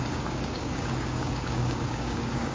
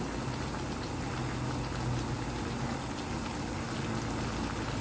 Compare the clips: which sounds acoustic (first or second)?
second